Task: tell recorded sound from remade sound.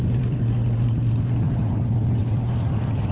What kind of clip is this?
recorded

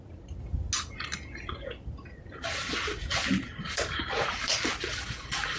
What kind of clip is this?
recorded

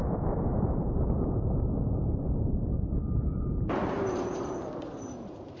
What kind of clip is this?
remade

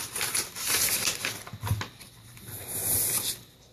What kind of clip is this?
recorded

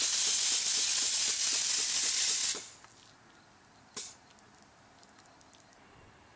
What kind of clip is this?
recorded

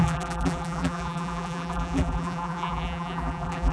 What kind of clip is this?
remade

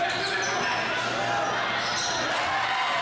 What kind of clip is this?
recorded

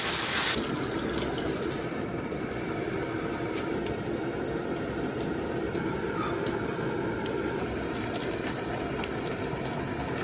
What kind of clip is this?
remade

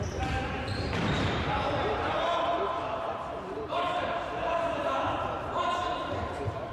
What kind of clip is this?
remade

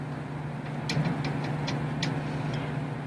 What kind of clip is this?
recorded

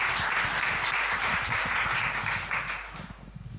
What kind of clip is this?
recorded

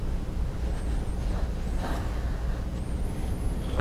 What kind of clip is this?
recorded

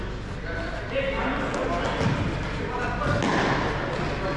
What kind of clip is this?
recorded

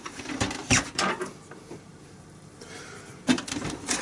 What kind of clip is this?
remade